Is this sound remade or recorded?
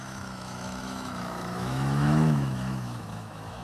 remade